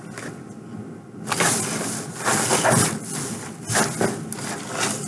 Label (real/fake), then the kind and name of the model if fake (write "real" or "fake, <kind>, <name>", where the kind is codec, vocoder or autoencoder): real